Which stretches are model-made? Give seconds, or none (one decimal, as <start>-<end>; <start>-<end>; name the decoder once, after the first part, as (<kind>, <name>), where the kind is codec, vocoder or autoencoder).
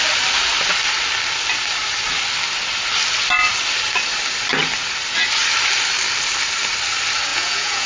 7.3-7.9 (vocoder, Vocos)